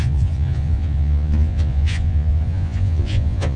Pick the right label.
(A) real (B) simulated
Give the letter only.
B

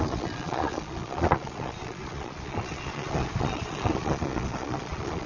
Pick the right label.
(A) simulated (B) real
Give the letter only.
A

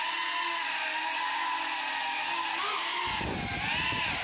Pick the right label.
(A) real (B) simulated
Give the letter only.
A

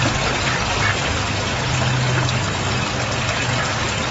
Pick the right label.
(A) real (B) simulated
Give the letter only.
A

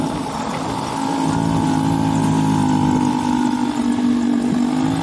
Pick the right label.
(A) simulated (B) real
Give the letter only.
B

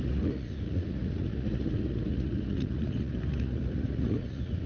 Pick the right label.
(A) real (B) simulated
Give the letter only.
B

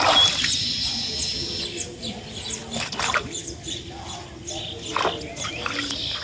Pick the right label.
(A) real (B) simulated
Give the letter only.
A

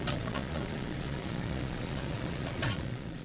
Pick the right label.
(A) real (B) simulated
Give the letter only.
B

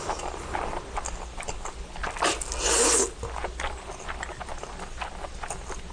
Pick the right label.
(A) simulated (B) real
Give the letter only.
B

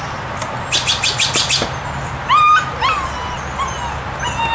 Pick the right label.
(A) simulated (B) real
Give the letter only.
B